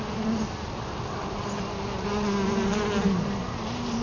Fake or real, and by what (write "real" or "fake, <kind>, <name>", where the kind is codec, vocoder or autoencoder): real